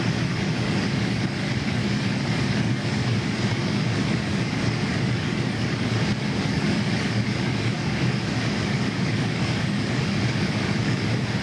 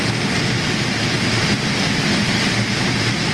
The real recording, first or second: second